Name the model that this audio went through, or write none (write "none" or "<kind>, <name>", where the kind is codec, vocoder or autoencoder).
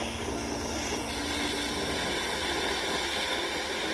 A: none